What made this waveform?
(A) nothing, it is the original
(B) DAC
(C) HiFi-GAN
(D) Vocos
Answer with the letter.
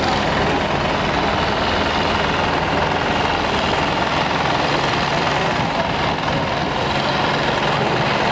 A